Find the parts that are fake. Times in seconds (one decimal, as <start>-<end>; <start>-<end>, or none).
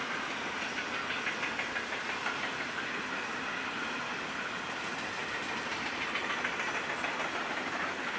none